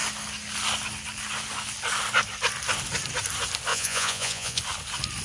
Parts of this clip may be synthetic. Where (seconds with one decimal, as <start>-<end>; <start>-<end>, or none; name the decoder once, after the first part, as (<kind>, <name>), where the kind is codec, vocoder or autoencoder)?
3.7-4.6 (vocoder, Vocos)